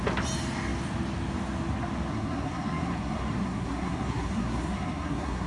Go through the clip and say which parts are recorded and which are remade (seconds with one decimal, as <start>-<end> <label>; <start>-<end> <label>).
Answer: 0.0-2.1 recorded; 2.1-5.5 remade